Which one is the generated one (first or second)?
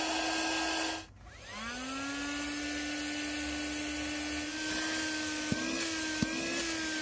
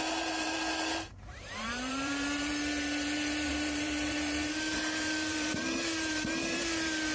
second